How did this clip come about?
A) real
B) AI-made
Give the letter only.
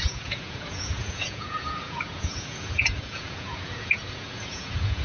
B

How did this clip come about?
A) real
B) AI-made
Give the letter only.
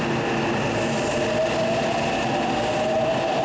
A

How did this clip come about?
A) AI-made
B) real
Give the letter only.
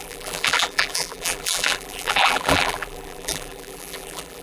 A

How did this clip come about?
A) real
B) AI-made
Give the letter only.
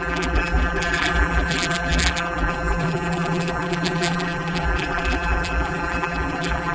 B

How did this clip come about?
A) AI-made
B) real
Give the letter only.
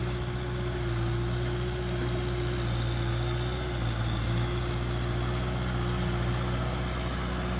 B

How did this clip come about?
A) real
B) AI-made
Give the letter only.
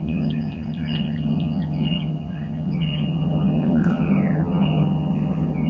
B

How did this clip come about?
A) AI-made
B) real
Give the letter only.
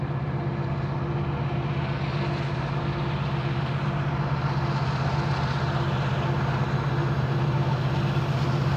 B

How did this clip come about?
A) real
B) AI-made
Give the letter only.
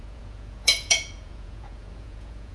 B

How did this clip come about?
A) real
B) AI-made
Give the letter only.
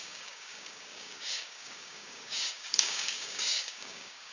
B